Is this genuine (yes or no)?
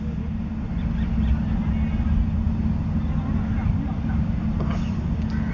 yes